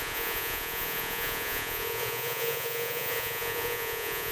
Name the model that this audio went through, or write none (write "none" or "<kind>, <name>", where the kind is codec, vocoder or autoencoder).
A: vocoder, Vocos